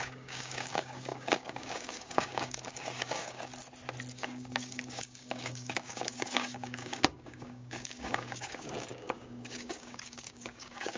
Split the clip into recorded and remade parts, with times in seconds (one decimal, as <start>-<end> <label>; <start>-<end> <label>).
0.0-3.5 remade; 3.5-4.1 recorded; 4.1-11.0 remade